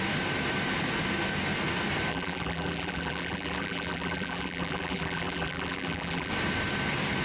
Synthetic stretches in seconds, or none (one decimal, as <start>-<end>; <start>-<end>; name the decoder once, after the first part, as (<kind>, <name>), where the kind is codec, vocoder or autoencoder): 2.1-6.3 (vocoder, BigVGAN v2)